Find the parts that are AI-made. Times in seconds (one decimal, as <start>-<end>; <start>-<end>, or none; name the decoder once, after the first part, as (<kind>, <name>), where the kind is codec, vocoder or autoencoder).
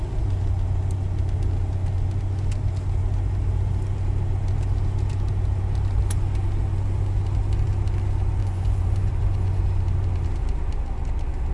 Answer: 8.4-9.6 (vocoder, Vocos)